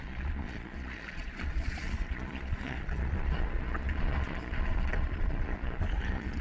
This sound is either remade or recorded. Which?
remade